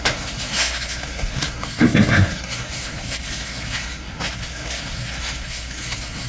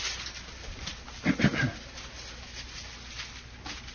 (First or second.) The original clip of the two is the second